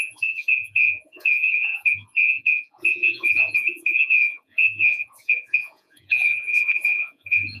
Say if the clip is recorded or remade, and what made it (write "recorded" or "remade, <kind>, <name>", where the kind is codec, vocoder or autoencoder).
remade, vocoder, Vocos